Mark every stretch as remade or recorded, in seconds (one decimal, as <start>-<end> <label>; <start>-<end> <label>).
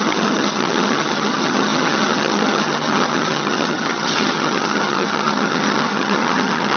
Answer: 0.0-6.8 remade